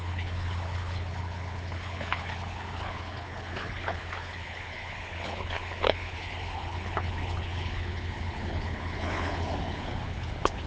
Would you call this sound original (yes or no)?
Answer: no